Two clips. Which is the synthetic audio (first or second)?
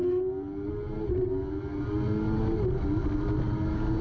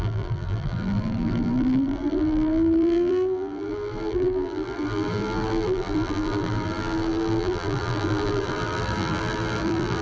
second